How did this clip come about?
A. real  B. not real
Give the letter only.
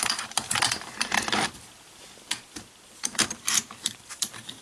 B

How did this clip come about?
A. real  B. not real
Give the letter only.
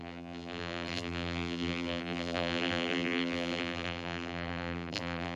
B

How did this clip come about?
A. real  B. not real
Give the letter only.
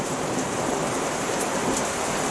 B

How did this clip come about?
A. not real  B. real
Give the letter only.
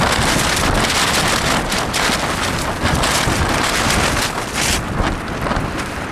B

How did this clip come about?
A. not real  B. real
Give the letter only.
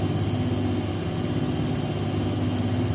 B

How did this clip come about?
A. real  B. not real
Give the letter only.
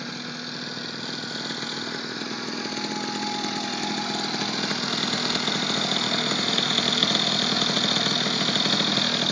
A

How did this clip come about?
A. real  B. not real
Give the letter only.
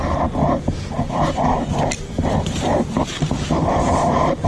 B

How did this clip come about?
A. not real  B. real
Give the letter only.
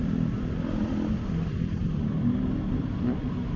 A